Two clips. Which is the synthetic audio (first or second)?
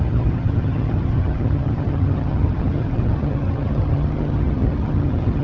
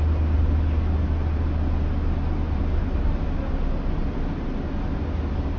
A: first